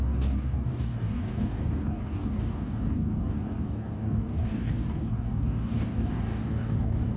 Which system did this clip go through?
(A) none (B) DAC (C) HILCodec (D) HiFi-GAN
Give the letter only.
B